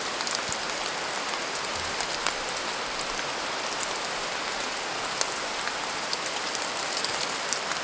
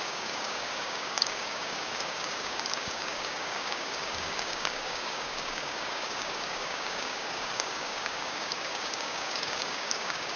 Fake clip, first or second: second